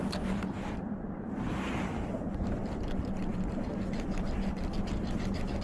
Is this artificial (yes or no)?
no